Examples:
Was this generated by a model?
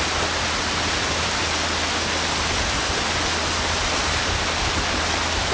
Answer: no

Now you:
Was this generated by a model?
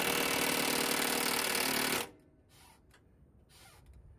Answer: no